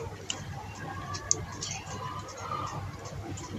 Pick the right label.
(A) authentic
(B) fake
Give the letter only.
A